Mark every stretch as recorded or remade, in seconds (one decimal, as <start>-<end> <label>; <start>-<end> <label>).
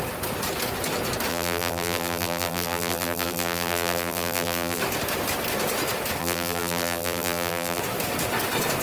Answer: 0.0-1.3 recorded; 1.3-4.8 remade; 4.8-6.2 recorded; 6.2-7.8 remade; 7.8-8.8 recorded